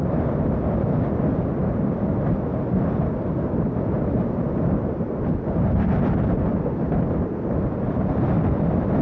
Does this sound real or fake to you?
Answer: real